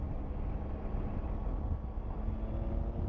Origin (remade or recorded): recorded